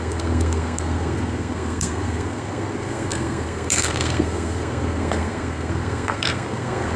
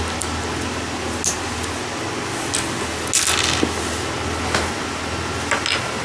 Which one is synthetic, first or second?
first